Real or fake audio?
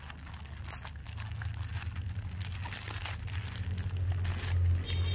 real